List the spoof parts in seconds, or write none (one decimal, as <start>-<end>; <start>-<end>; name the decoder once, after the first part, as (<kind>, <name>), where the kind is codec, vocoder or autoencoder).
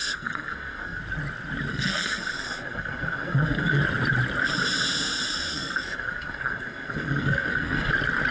0.0-1.0 (codec, SNAC); 1.7-3.8; 5.5-7.9